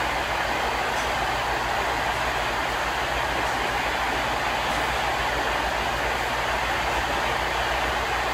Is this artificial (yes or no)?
no